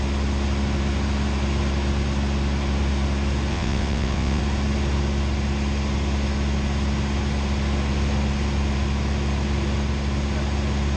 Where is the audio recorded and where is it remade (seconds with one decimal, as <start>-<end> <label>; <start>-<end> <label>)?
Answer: 0.0-3.5 recorded; 3.5-4.4 remade; 4.4-11.0 recorded